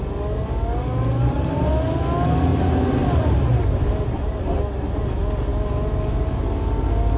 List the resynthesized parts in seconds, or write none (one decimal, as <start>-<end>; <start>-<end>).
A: 1.2-1.7; 2.5-4.4